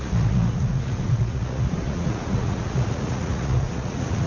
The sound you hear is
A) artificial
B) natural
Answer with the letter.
A